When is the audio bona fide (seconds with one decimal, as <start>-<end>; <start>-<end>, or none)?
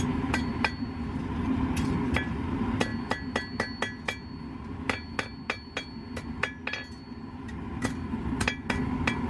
0.0-9.3